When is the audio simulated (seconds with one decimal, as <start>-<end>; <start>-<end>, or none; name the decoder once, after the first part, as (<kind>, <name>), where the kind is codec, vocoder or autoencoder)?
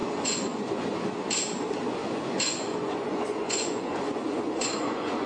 0.0-1.0 (vocoder, Vocos); 2.0-5.3